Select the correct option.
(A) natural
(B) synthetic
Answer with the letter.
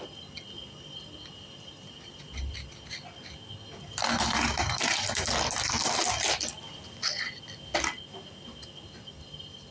A